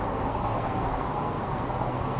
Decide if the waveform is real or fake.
fake